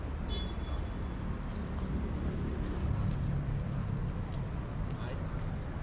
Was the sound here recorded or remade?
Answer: recorded